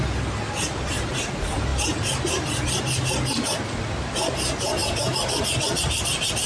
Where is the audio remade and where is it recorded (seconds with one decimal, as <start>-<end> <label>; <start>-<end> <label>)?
0.0-6.5 recorded